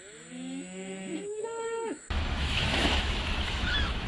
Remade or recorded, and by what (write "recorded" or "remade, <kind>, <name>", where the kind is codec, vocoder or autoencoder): remade, autoencoder, DAC-VAE